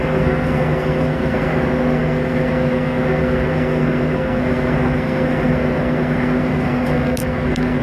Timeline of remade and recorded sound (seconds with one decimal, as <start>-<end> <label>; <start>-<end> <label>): 0.0-7.8 remade

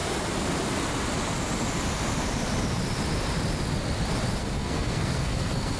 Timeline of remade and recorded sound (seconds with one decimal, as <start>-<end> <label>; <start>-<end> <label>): 0.0-4.4 recorded; 4.4-5.8 remade

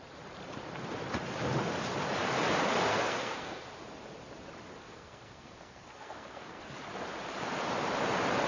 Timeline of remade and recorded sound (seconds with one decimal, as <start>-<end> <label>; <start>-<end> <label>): 0.0-2.9 recorded; 2.9-3.6 remade; 3.6-4.8 recorded; 4.8-6.6 remade; 6.6-8.5 recorded

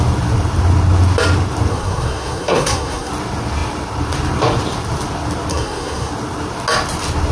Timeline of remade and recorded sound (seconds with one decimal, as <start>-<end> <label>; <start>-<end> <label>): 0.0-1.7 recorded; 1.7-3.1 remade; 3.1-5.5 recorded; 5.5-6.1 remade; 6.1-7.3 recorded

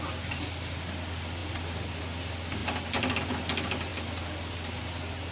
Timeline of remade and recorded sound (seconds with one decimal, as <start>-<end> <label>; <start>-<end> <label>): 0.0-5.3 recorded

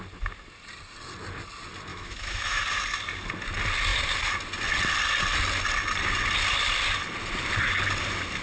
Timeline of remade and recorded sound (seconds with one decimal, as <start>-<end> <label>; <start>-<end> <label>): 0.0-1.9 recorded; 1.9-2.6 remade; 2.6-8.4 recorded

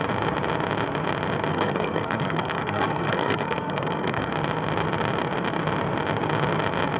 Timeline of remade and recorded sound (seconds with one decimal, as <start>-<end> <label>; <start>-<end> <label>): 0.0-1.5 recorded; 1.5-4.3 remade; 4.3-7.0 recorded